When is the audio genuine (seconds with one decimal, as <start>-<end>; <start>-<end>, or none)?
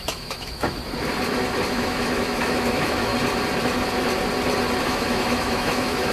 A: 0.8-1.7; 3.1-4.8